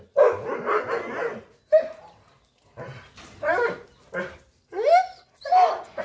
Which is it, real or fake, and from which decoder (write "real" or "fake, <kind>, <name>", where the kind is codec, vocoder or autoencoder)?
real